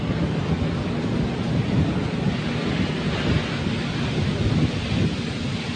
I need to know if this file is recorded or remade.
recorded